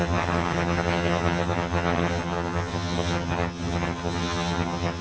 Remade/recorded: remade